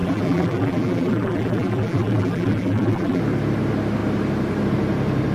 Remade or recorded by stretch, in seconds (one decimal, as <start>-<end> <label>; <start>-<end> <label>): 0.0-3.2 remade; 3.2-5.3 recorded